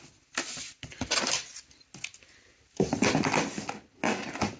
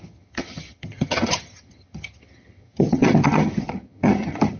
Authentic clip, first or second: first